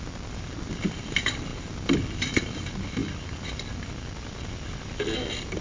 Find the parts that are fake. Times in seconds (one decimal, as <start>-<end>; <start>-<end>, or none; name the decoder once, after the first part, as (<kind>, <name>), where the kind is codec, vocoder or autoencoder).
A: none